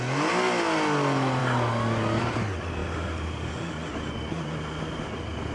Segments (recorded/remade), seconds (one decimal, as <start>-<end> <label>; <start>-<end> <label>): 0.0-5.5 recorded